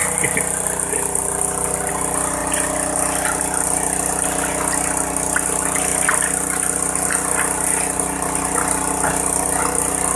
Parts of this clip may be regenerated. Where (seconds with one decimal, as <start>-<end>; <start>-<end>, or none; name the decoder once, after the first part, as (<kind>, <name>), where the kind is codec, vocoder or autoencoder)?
0.0-1.9 (vocoder, BigVGAN v2)